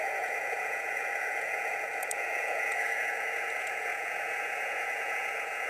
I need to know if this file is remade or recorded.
remade